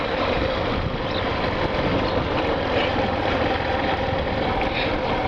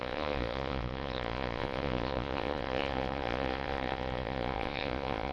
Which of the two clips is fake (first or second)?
second